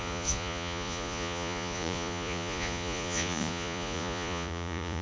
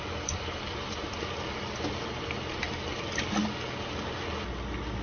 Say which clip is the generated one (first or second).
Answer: first